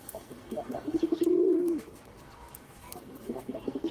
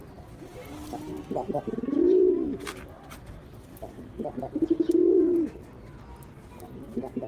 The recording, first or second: second